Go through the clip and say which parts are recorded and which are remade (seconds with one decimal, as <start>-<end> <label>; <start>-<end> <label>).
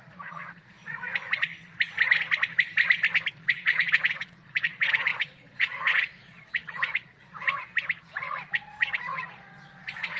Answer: 0.0-1.5 remade; 1.5-3.3 recorded; 3.3-7.7 remade; 7.7-8.3 recorded; 8.3-10.2 remade